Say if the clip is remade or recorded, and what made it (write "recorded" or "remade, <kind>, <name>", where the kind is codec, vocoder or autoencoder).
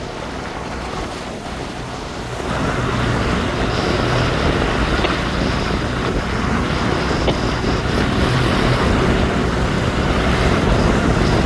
recorded